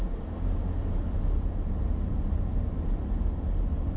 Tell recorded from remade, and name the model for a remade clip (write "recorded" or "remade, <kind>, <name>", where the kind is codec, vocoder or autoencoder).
recorded